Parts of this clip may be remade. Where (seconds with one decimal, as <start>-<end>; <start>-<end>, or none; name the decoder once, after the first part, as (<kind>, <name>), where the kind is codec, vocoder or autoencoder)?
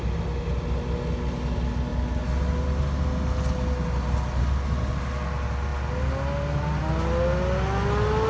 none